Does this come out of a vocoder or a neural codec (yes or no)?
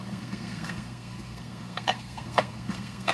yes